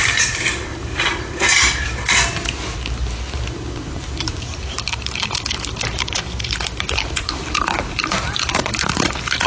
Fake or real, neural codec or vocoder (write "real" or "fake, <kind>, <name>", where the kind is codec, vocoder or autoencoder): fake, vocoder, BigVGAN v2